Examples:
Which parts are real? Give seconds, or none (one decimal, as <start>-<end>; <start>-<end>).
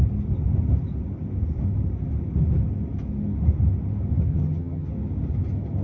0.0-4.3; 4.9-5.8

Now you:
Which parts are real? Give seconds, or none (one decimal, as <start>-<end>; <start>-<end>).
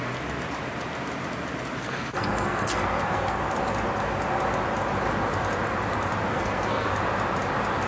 0.0-1.8; 3.4-6.3; 6.9-7.9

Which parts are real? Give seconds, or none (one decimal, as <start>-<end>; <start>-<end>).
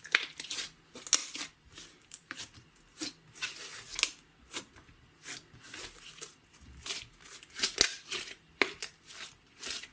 0.0-1.2; 2.4-9.9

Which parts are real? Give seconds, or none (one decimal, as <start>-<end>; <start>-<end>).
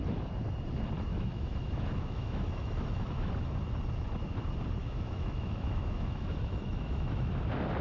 0.0-1.1; 3.3-4.8; 7.3-7.8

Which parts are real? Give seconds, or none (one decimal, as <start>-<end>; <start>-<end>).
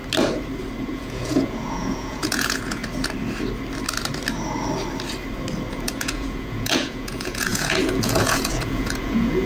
0.0-0.8; 2.8-5.7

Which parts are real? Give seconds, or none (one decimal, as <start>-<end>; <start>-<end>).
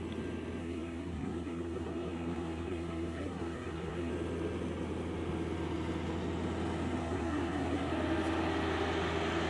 0.0-0.6; 4.1-7.0; 7.9-9.5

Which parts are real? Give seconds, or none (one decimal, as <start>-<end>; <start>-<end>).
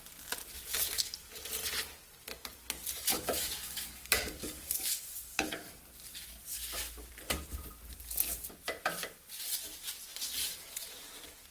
0.0-3.1; 5.7-6.5; 7.1-11.5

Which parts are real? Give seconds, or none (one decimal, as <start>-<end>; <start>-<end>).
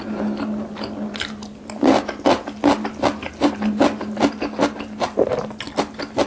0.0-6.3